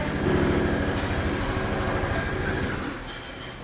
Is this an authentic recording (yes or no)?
yes